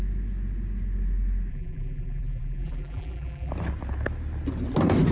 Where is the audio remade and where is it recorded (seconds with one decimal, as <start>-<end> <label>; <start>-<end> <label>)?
0.0-1.5 recorded; 1.5-3.5 remade; 3.5-5.1 recorded